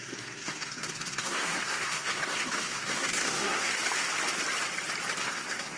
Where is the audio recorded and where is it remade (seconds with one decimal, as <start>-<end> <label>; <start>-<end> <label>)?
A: 0.0-3.7 remade; 3.7-5.2 recorded; 5.2-5.8 remade

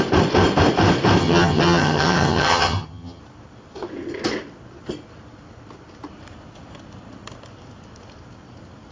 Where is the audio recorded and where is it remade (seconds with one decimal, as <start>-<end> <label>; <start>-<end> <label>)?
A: 0.0-1.2 recorded; 1.2-3.2 remade; 3.2-8.9 recorded